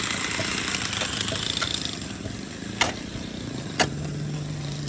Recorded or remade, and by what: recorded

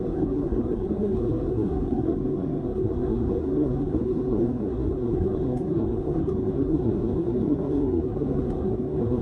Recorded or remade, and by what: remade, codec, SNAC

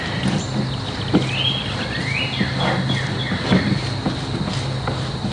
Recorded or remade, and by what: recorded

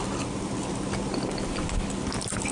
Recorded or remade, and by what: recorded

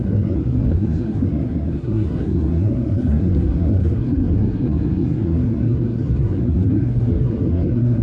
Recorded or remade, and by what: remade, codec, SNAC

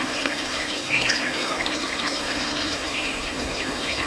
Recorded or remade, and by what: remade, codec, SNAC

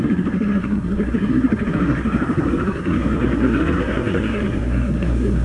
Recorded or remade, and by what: remade, codec, SNAC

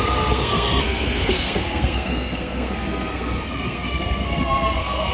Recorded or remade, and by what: remade, codec, SNAC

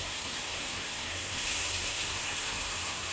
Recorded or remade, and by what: remade, codec, SNAC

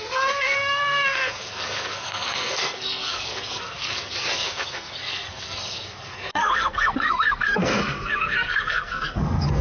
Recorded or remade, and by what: remade, codec, SNAC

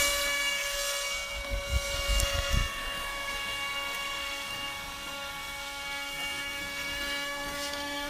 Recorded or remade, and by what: remade, codec, SNAC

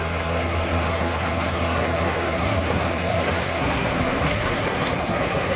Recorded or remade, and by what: remade, codec, SNAC